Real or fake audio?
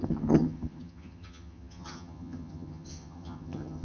fake